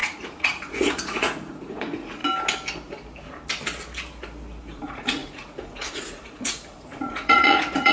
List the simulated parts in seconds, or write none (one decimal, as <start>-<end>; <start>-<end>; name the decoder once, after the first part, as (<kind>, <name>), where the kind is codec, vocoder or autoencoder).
0.0-2.2 (vocoder, Vocos); 4.6-7.9